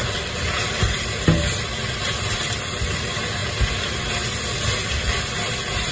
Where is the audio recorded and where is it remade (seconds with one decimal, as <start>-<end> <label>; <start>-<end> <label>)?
0.0-5.9 recorded